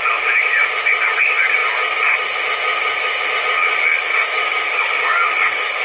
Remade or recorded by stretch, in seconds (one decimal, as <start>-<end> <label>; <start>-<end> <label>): 0.0-4.1 recorded; 4.1-5.8 remade